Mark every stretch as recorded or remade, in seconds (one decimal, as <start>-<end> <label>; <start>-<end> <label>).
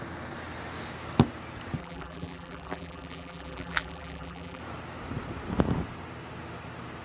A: 0.0-1.8 recorded; 1.8-4.6 remade; 4.6-7.0 recorded